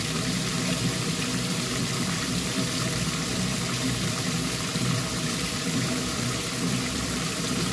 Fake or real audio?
fake